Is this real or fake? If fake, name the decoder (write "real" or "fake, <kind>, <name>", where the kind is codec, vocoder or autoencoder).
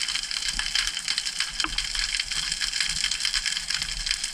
real